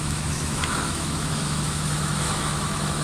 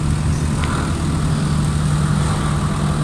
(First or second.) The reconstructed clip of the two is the first